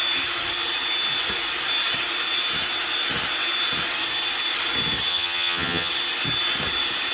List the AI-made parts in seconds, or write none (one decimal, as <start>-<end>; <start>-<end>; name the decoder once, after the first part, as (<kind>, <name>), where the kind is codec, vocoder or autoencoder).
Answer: 5.1-5.9 (vocoder, HiFi-GAN)